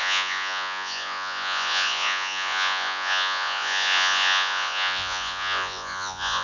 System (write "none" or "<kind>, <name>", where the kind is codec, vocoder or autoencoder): vocoder, Vocos